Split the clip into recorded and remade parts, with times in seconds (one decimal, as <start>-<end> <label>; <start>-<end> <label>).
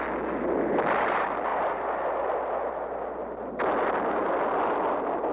0.0-5.3 recorded